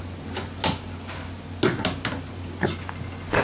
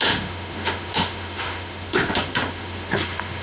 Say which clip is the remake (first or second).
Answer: second